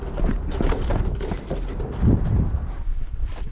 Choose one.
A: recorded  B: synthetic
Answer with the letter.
A